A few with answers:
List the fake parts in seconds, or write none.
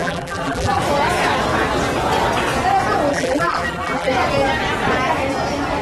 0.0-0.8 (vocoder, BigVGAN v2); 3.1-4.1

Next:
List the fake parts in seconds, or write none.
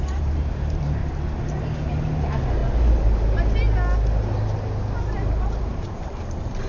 0.0-1.0 (vocoder, BigVGAN v2); 1.6-2.6; 5.6-6.7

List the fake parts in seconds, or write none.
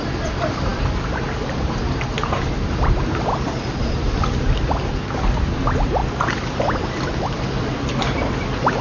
0.0-6.0 (vocoder, BigVGAN v2); 8.0-8.8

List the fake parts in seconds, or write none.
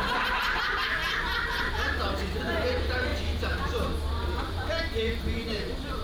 0.0-1.0 (vocoder, BigVGAN v2); 2.1-6.0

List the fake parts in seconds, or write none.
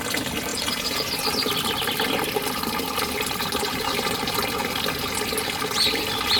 0.5-1.5 (vocoder, BigVGAN v2); 3.7-4.6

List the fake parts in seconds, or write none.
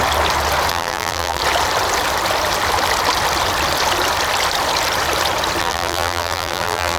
0.7-1.4 (vocoder, BigVGAN v2); 5.6-7.0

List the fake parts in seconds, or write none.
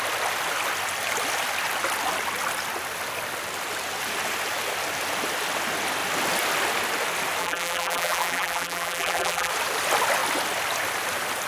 7.4-9.5 (vocoder, BigVGAN v2)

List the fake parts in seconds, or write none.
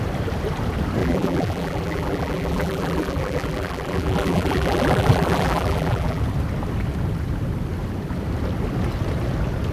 1.0-6.2 (vocoder, BigVGAN v2)